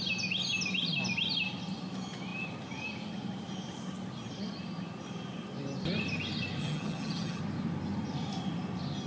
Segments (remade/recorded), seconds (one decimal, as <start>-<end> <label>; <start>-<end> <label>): 0.0-6.6 recorded; 6.6-7.4 remade; 7.4-9.1 recorded